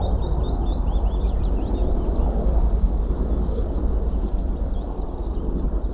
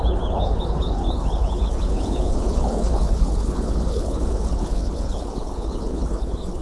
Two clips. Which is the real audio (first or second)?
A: first